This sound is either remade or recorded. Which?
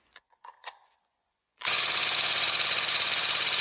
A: remade